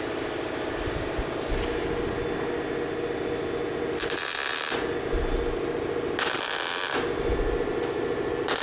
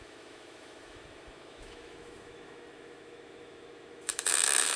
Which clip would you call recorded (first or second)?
first